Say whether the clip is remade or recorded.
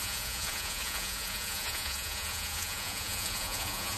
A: remade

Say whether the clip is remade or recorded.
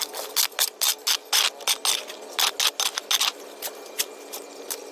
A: recorded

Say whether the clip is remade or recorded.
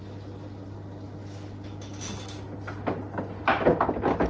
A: recorded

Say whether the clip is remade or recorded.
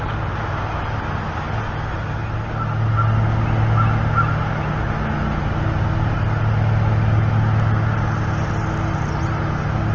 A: recorded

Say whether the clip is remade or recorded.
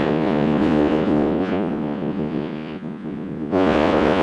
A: remade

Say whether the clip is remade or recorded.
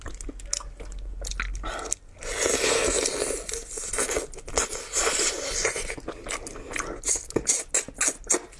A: recorded